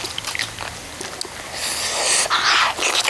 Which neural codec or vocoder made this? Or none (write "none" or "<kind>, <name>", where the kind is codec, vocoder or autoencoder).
none